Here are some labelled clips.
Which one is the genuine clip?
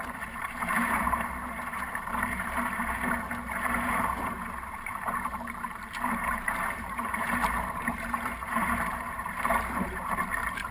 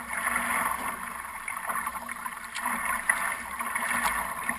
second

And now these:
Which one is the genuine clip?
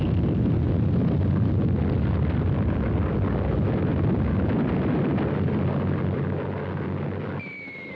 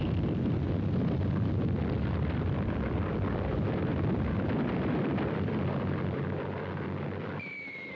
first